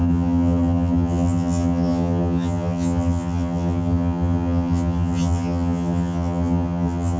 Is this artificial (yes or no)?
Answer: yes